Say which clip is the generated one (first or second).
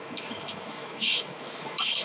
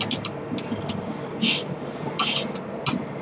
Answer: first